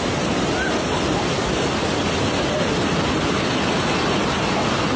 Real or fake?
real